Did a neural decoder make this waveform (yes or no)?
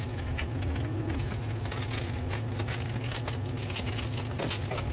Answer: no